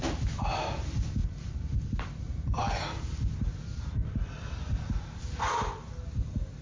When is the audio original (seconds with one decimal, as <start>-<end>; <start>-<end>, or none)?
0.0-6.6